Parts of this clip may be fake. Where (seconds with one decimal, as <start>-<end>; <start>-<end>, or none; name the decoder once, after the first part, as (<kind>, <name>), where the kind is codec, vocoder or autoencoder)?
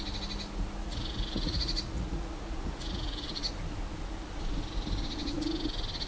0.8-3.4 (vocoder, Vocos)